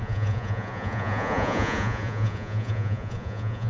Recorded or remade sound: remade